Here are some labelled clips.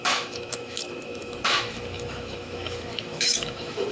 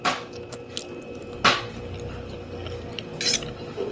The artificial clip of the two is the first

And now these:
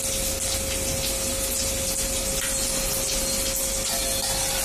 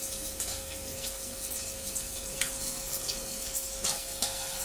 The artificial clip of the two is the second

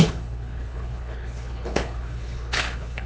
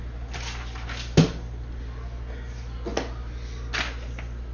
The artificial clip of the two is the first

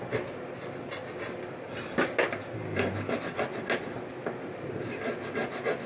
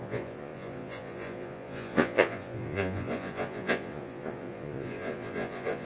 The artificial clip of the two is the second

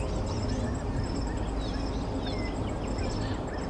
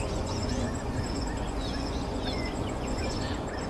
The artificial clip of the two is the second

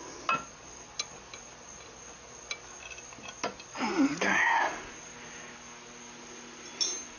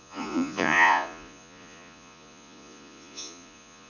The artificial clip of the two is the second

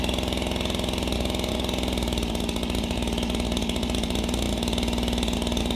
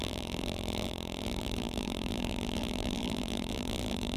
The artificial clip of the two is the second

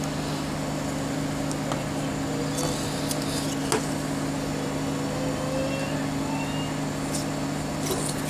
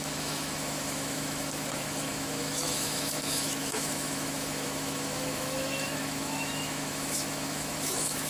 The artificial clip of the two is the second